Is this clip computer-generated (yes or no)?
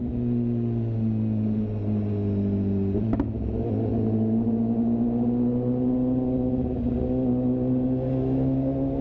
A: no